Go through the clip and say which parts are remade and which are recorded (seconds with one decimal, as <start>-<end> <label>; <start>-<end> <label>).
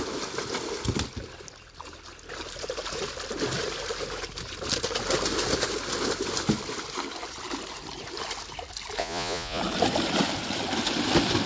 0.0-9.0 recorded; 9.0-9.6 remade; 9.6-11.5 recorded